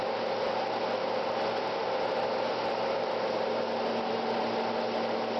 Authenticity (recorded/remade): recorded